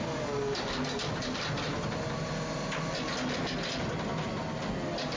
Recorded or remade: recorded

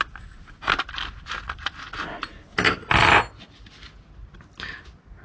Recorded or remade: recorded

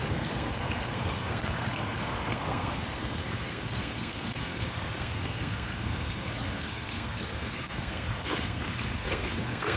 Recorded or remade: remade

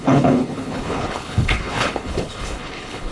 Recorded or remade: remade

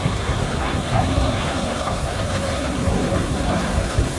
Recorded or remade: remade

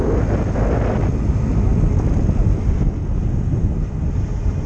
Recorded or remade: recorded